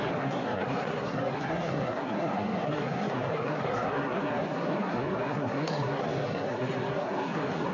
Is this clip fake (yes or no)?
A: yes